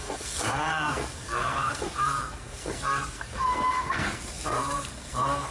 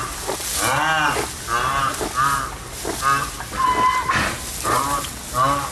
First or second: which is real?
second